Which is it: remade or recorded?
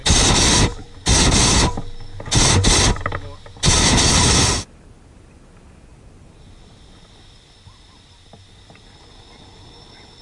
recorded